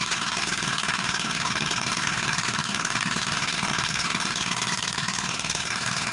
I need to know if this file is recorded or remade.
remade